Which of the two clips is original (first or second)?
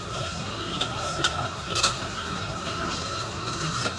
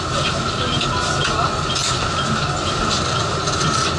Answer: second